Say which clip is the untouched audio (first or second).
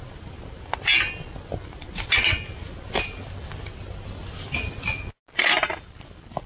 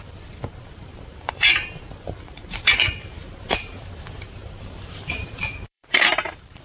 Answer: first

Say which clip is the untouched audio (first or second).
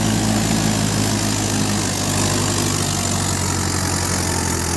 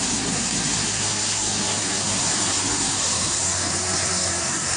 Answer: first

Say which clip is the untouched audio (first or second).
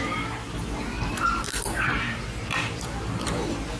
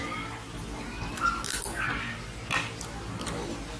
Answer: second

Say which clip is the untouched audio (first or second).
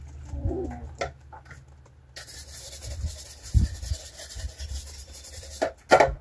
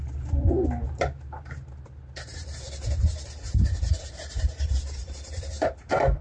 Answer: first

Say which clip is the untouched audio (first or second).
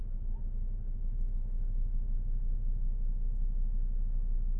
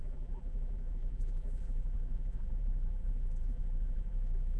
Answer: first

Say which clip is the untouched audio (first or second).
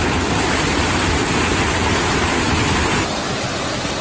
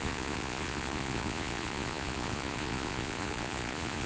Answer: first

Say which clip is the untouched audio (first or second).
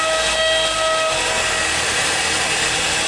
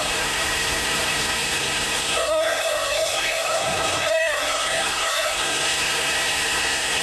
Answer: first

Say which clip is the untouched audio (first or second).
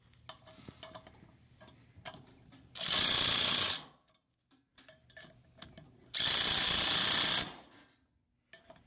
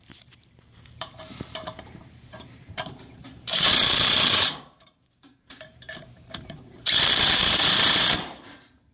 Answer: first